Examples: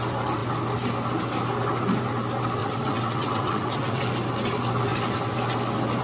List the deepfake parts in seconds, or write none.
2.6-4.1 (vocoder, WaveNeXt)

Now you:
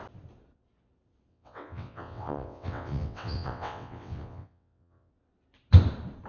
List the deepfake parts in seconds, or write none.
1.3-5.1 (vocoder, WaveNeXt)

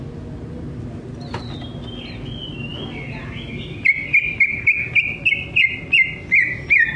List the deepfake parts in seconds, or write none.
none

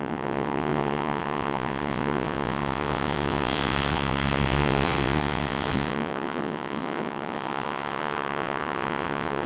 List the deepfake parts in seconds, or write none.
0.0-9.5 (vocoder, WaveNeXt)

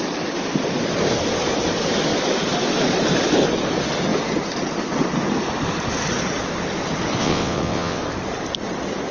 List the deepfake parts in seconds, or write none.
7.2-8.0 (vocoder, WaveNeXt)